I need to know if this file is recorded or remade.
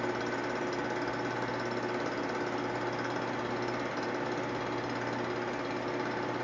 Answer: recorded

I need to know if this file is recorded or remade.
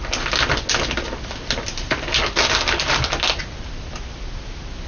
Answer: recorded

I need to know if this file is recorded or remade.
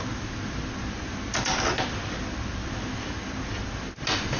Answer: recorded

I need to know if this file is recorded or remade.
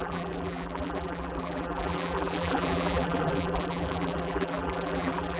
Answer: remade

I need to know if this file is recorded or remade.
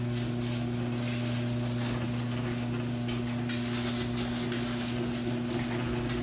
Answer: recorded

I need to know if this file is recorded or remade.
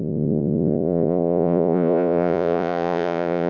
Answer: remade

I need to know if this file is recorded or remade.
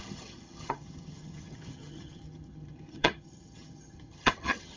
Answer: remade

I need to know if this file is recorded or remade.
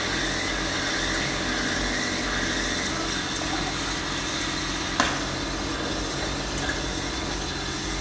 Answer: recorded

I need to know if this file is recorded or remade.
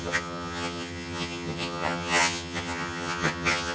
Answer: remade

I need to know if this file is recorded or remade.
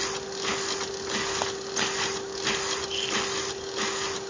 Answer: recorded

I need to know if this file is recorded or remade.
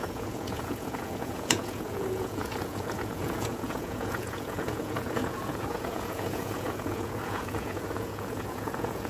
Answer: remade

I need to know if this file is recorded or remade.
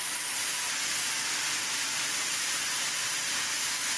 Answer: recorded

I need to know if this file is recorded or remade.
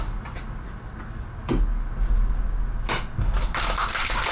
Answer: recorded